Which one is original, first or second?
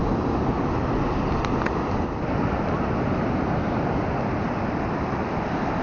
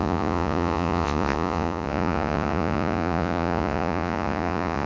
first